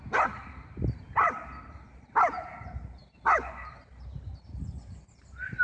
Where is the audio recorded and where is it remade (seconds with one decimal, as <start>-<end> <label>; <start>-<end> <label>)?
0.0-3.0 recorded; 3.0-5.6 remade